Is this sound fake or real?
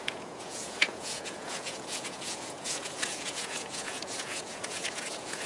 fake